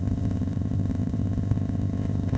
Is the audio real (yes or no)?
no